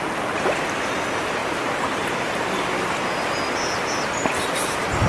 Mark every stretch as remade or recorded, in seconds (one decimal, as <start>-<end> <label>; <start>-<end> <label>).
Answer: 0.0-5.1 recorded